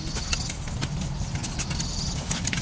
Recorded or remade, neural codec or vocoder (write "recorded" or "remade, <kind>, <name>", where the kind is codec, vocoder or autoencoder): recorded